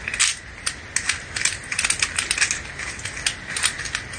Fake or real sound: real